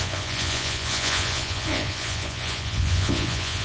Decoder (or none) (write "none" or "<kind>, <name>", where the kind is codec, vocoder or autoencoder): vocoder, Vocos